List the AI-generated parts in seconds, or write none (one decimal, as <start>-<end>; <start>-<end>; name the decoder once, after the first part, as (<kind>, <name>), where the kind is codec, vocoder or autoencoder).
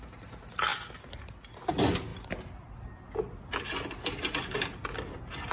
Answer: none